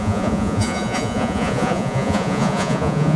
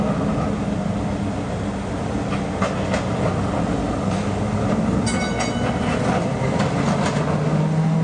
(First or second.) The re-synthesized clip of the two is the first